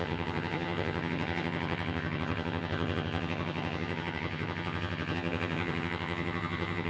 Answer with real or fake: fake